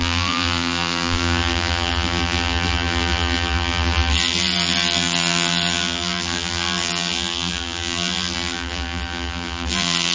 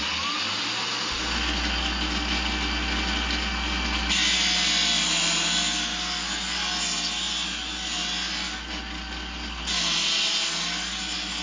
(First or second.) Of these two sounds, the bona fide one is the second